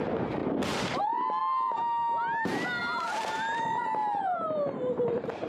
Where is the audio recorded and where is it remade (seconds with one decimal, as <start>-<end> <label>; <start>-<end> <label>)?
0.0-0.4 remade; 0.4-1.0 recorded; 1.0-1.4 remade; 1.4-2.8 recorded; 2.8-5.5 remade